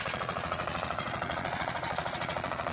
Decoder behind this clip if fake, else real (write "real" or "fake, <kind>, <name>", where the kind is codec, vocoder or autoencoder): fake, vocoder, Vocos